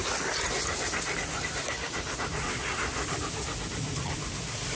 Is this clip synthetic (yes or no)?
no